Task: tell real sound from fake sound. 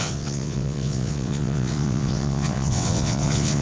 fake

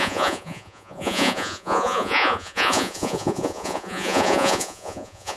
fake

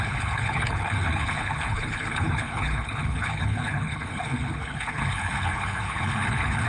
fake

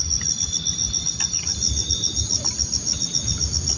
real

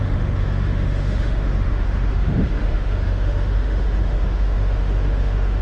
fake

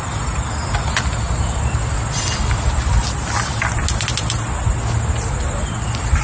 real